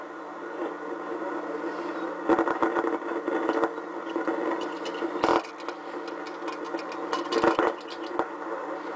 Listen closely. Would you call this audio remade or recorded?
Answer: recorded